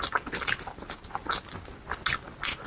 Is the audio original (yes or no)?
yes